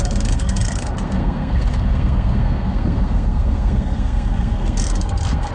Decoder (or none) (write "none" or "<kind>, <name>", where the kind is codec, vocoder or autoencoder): codec, SNAC